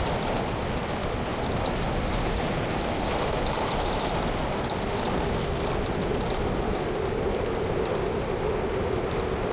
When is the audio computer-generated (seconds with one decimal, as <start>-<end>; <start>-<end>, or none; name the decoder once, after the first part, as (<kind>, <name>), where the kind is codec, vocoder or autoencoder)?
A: none